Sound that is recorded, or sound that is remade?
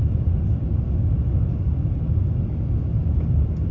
recorded